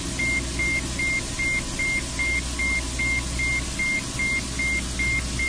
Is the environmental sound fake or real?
real